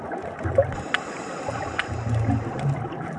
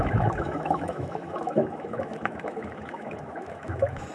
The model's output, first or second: second